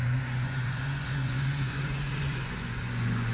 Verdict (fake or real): fake